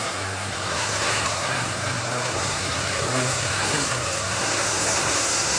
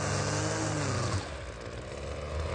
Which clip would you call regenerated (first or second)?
first